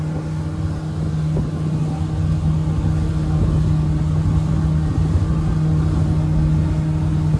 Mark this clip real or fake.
real